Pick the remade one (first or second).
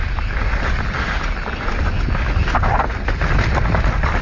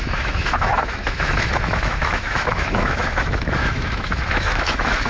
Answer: second